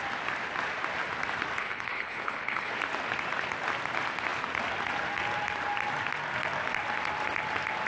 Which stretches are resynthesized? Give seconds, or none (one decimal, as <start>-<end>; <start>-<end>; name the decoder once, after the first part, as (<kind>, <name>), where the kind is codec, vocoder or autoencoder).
1.6-2.7 (codec, HILCodec)